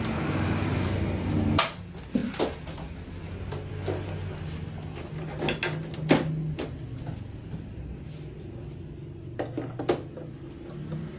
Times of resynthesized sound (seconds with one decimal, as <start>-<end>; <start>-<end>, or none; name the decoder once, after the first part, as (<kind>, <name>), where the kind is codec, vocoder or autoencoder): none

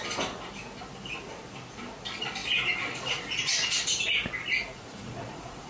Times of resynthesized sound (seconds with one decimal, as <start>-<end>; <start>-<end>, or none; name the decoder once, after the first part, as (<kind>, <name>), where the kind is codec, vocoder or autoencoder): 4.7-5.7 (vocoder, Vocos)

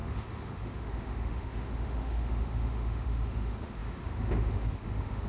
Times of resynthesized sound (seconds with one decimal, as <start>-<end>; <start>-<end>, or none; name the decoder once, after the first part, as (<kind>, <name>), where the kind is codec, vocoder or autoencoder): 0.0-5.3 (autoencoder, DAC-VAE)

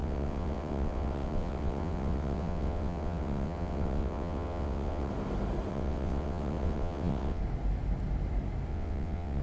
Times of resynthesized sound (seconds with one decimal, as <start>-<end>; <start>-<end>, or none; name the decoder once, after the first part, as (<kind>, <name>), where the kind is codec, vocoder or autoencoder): 0.0-5.1 (vocoder, WaveNeXt); 5.7-7.4; 8.7-9.4

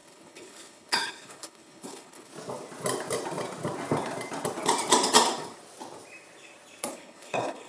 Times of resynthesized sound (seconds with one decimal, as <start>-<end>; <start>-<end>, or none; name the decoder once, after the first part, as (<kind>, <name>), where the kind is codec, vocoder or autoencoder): 0.0-2.3 (codec, HILCodec); 6.9-7.7

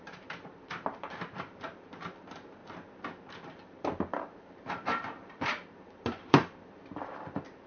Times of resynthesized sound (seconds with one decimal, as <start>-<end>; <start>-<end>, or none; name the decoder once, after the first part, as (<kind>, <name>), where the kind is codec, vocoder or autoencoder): 0.0-2.6 (vocoder, BigVGAN v2); 3.3-7.7

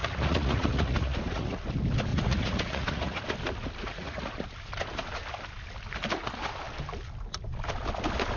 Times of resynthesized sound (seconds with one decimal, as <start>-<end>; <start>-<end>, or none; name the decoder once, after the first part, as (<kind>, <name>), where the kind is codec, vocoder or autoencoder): 0.0-1.6 (vocoder, Vocos); 2.1-3.2; 3.8-4.4